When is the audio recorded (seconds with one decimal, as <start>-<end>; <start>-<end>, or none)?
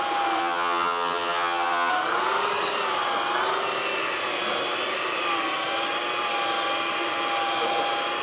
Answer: 0.0-0.4; 1.9-8.2